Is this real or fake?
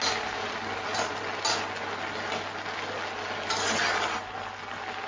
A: real